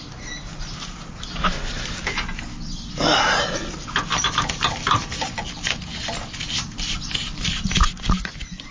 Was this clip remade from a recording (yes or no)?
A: no